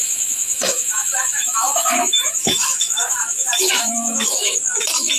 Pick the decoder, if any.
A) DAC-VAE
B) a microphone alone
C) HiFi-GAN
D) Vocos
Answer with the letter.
A